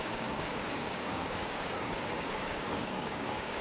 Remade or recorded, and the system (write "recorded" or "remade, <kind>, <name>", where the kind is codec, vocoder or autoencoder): remade, codec, DAC